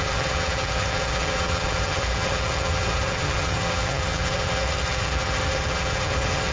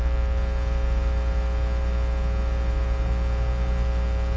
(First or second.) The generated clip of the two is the first